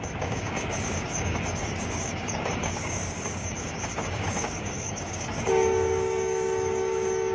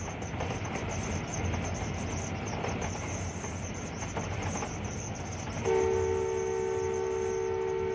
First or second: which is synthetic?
first